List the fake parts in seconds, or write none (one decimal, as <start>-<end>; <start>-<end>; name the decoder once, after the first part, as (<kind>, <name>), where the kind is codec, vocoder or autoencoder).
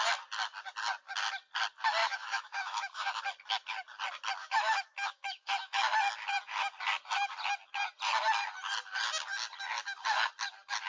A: 2.0-3.2 (autoencoder, DAC-VAE); 4.4-5.8